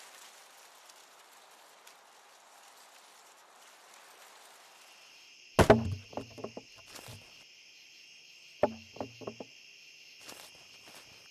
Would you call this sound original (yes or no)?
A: yes